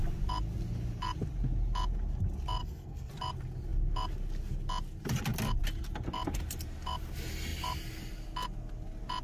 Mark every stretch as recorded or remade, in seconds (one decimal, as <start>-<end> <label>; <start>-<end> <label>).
0.0-2.6 recorded; 2.6-3.1 remade; 3.1-9.2 recorded